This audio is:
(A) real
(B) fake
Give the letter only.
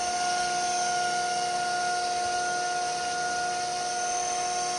A